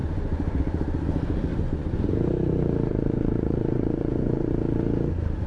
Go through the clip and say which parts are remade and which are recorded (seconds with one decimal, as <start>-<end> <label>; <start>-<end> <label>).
0.0-0.6 remade; 0.6-1.5 recorded; 1.5-2.0 remade; 2.0-2.9 recorded; 2.9-4.5 remade; 4.5-5.5 recorded